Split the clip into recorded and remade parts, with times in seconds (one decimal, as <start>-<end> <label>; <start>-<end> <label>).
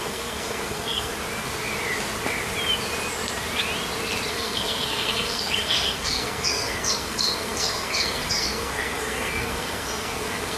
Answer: 0.0-1.1 remade; 1.1-4.3 recorded; 4.3-10.6 remade